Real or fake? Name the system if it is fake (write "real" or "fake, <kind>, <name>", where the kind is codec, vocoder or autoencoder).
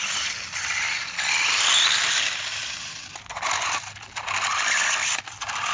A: fake, vocoder, BigVGAN v2